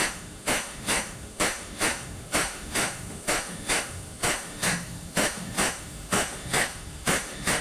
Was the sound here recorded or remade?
remade